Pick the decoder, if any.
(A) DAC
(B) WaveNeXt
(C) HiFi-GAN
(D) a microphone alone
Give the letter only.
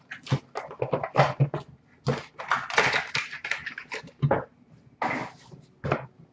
D